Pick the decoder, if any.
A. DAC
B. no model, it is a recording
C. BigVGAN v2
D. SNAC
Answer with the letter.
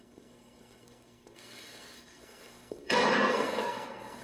D